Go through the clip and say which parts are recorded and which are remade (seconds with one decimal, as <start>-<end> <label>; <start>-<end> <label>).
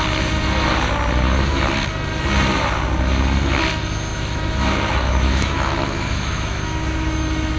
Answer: 0.0-4.1 recorded; 4.1-7.6 remade